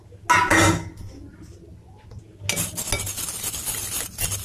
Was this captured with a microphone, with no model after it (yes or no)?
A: yes